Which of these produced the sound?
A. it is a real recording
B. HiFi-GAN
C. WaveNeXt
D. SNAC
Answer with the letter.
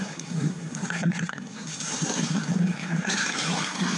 D